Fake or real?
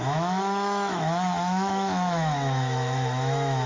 fake